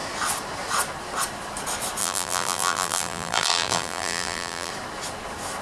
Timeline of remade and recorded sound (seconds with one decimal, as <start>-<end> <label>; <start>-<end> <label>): 0.0-2.0 recorded; 2.0-4.7 remade; 4.7-5.6 recorded